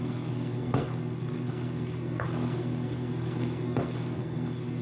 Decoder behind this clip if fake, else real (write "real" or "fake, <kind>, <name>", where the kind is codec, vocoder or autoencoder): fake, codec, SNAC